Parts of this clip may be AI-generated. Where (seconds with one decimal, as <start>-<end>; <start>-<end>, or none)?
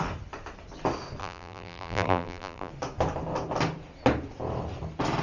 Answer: 1.2-2.7